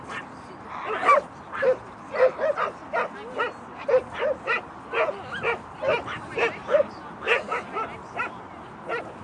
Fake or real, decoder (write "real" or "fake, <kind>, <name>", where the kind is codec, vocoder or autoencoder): real